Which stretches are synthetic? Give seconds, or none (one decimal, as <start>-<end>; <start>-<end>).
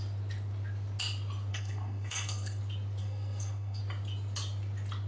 1.5-2.6; 3.0-3.8